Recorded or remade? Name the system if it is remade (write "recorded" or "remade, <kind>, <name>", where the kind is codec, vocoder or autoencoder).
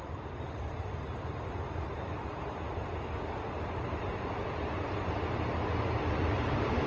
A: recorded